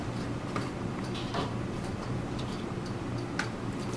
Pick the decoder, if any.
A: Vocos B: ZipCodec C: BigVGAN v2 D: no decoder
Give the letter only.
C